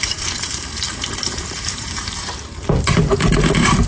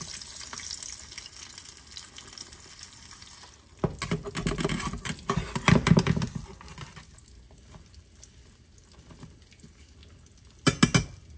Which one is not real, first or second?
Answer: first